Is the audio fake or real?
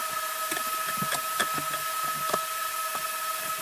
real